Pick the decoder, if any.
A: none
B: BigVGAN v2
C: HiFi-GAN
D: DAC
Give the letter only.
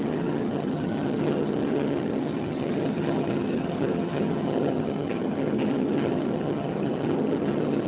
C